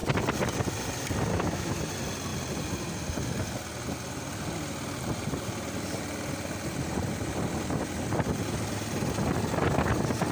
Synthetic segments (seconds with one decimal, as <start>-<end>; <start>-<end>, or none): 1.3-1.9